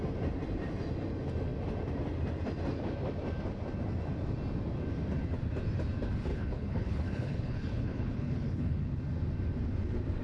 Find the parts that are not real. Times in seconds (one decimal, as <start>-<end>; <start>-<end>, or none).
6.3-9.0